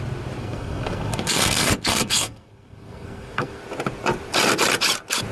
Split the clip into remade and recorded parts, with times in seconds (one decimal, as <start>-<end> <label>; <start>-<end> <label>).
0.0-0.4 recorded; 0.4-3.6 remade; 3.6-5.3 recorded